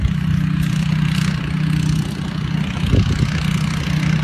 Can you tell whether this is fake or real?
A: real